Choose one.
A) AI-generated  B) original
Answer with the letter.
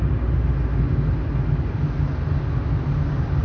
B